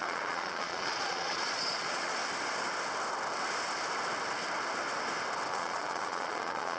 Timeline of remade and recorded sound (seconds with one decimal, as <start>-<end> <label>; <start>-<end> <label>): 0.0-2.2 remade; 2.2-5.5 recorded; 5.5-6.8 remade

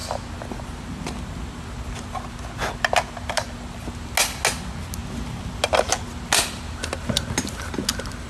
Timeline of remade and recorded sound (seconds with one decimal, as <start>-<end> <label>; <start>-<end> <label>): 0.0-8.3 recorded

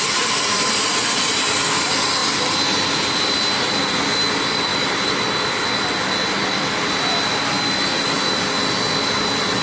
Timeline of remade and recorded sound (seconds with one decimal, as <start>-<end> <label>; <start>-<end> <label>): 0.0-9.6 recorded

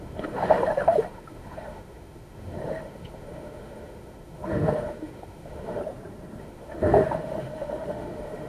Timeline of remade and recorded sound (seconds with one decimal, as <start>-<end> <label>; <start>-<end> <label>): 0.0-5.8 remade; 5.8-6.4 recorded; 6.4-8.5 remade

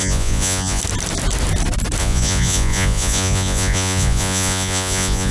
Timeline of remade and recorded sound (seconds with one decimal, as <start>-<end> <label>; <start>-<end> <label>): 0.0-0.8 remade; 0.8-2.0 recorded; 2.0-5.3 remade

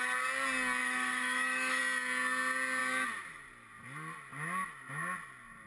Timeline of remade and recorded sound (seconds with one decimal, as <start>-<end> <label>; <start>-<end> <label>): 0.0-0.8 recorded; 0.8-1.8 remade; 1.8-5.7 recorded